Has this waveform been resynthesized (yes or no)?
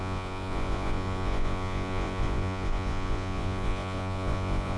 yes